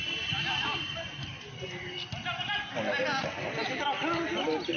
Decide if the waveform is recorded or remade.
recorded